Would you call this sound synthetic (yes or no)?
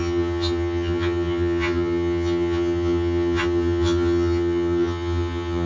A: yes